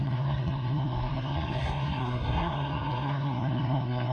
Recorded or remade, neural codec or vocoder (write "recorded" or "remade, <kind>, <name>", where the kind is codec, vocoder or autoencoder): remade, codec, SNAC